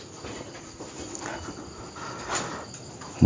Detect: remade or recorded recorded